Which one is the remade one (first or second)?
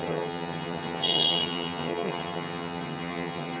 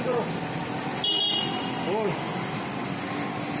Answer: first